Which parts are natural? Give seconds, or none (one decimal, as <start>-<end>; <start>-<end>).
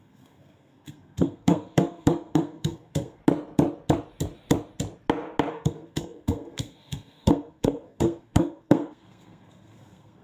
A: 3.2-5.5